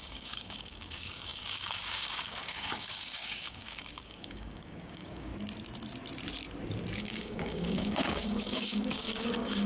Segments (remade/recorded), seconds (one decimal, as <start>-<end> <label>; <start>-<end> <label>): 0.0-5.3 remade; 5.3-7.0 recorded; 7.0-9.7 remade